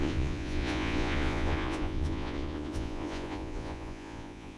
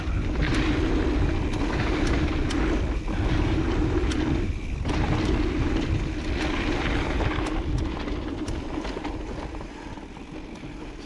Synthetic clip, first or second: first